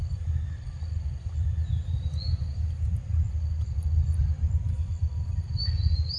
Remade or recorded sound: recorded